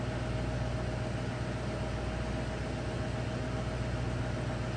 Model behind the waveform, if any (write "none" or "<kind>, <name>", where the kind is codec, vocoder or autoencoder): none